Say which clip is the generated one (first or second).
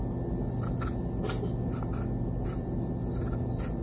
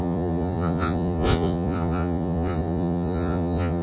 second